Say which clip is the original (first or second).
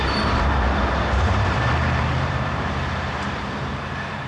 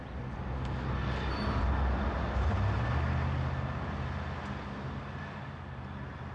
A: second